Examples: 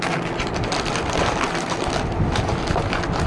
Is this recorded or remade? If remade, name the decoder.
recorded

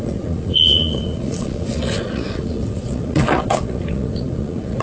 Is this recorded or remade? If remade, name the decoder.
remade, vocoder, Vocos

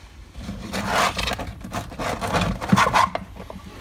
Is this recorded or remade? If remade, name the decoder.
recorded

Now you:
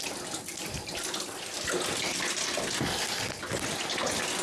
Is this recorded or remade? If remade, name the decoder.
recorded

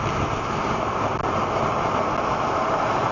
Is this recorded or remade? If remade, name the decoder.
recorded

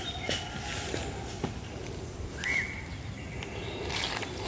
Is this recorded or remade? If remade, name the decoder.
recorded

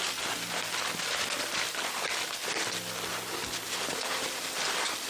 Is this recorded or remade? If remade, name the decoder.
recorded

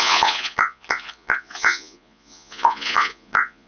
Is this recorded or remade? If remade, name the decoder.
remade, vocoder, Vocos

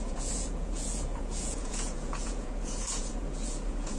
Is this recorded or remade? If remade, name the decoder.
remade, vocoder, Vocos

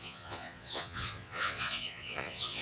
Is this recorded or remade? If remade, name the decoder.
remade, vocoder, Vocos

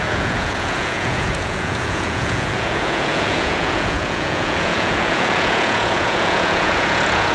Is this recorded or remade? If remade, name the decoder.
remade, vocoder, Vocos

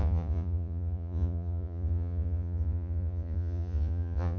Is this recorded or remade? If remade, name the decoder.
remade, vocoder, Vocos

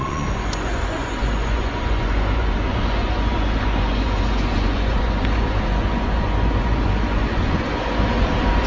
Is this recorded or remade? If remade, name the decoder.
remade, vocoder, Vocos